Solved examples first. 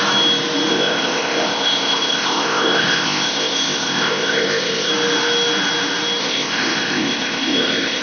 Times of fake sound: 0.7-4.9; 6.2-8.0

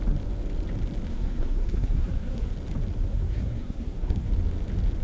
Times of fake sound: 1.1-2.5; 3.1-4.3

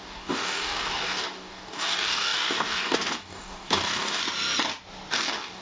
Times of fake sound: 0.0-4.2; 5.1-5.6

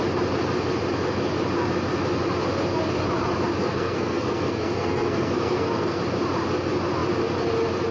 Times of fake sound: 3.6-6.0

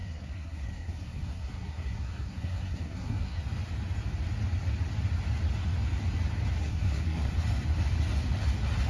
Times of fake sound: 0.0-3.4; 6.6-7.3

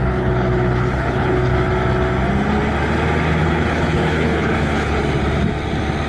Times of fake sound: 0.0-1.5; 3.4-5.0

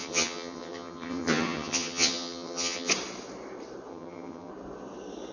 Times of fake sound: 0.0-2.9; 3.9-4.5

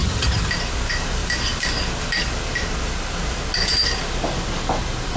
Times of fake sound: 0.0-0.5